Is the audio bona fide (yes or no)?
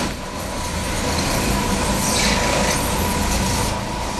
yes